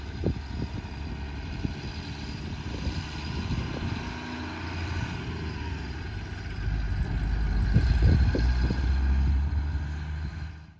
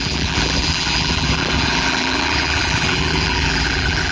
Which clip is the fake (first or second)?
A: second